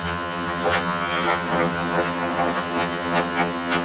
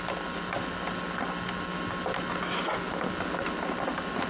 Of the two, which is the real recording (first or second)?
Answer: second